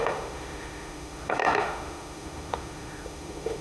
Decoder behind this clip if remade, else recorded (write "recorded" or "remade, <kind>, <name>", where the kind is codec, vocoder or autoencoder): remade, autoencoder, DAC-VAE